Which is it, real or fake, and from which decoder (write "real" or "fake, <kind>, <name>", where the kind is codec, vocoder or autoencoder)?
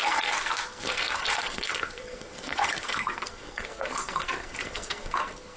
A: fake, codec, SNAC